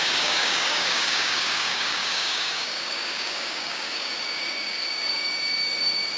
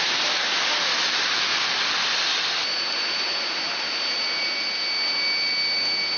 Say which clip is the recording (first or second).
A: second